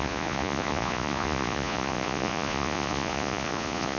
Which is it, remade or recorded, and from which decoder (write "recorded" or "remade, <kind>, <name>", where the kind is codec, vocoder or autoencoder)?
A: remade, vocoder, Vocos